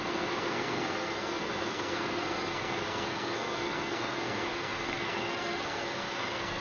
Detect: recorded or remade remade